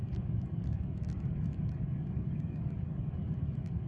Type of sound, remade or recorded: remade